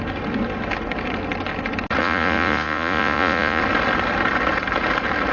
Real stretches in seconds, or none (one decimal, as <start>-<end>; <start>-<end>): 0.0-2.0; 3.6-5.3